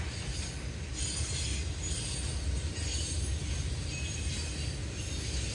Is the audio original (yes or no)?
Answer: yes